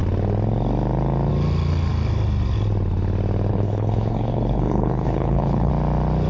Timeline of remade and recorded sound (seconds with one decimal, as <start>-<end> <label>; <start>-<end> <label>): 0.0-3.5 recorded; 3.5-5.7 remade; 5.7-6.3 recorded